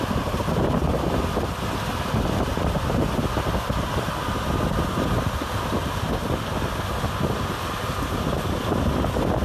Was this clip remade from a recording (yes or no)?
no